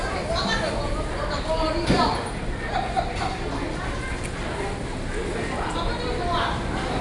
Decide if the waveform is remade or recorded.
recorded